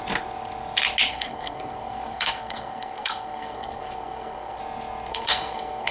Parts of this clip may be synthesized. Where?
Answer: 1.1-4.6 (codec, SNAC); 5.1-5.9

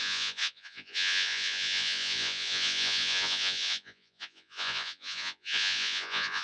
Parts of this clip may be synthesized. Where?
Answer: 0.0-6.4 (vocoder, Vocos)

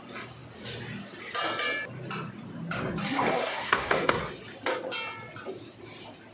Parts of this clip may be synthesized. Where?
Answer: 3.3-4.2 (codec, SNAC)